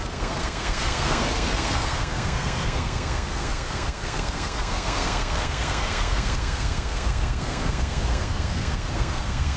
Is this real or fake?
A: fake